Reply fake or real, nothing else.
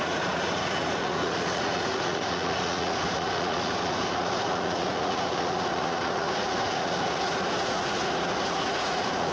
fake